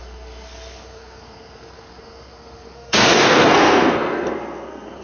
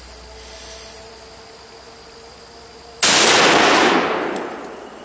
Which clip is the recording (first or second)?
second